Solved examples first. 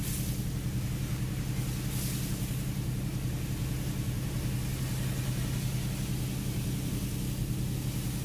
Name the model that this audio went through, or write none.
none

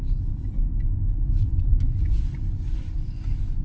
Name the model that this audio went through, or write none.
none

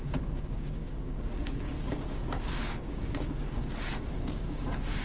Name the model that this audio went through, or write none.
codec, DAC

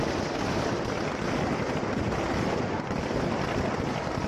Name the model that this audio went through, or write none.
none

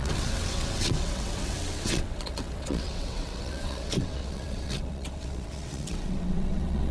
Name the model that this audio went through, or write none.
vocoder, WaveNeXt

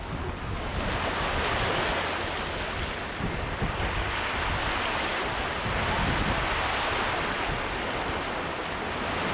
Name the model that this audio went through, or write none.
none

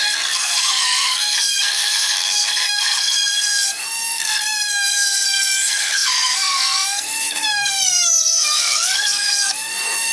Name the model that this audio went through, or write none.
codec, SNAC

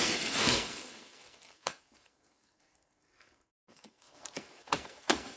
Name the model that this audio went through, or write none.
codec, SNAC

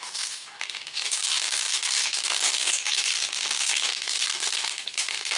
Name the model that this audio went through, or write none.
codec, DAC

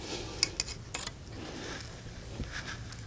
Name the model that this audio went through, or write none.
none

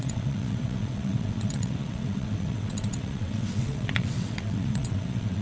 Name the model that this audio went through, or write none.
vocoder, WaveNeXt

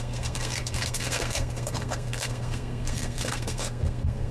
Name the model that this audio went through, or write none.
codec, SNAC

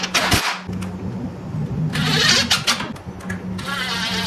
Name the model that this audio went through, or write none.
none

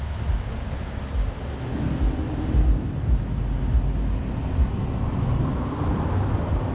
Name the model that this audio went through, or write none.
none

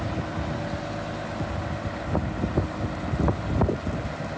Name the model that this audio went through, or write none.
none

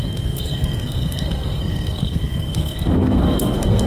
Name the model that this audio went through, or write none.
codec, SNAC